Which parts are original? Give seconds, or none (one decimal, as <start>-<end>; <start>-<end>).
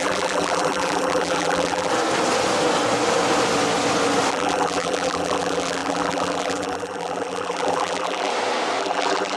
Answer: 1.9-4.3; 8.3-8.8